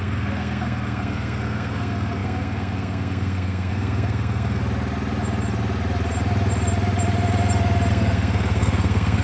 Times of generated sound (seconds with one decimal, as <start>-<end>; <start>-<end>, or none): 0.0-4.6; 7.9-9.2